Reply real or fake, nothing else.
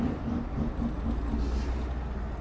real